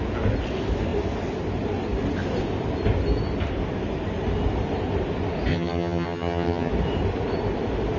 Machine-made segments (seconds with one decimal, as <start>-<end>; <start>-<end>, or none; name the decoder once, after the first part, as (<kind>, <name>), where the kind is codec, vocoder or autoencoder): 5.5-6.7 (vocoder, HiFi-GAN)